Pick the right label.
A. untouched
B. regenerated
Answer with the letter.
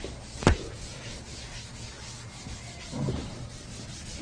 A